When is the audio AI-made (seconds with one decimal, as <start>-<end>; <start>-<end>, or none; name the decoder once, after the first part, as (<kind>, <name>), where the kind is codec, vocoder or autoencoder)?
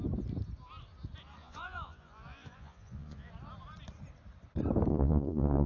1.4-3.3 (vocoder, Vocos); 4.9-5.7